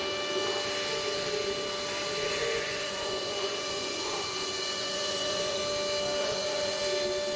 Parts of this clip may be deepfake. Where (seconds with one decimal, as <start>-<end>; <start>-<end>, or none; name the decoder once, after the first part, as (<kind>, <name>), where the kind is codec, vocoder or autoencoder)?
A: 2.3-5.6 (vocoder, Vocos); 6.2-6.8